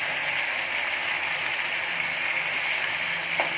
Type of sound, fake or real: real